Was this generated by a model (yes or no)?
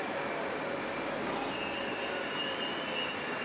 no